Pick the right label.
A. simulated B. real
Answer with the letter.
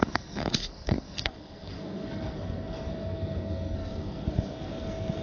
A